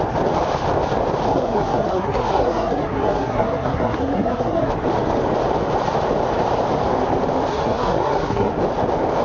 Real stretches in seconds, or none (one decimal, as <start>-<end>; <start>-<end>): 0.0-1.3; 4.7-7.5; 8.5-9.2